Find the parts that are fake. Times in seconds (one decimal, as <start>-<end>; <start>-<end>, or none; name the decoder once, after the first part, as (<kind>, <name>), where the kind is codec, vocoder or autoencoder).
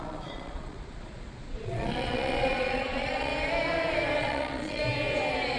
0.0-3.3 (vocoder, Vocos); 4.2-4.8